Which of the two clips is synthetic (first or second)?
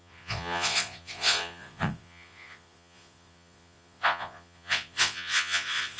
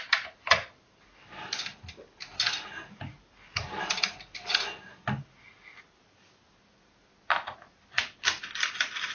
first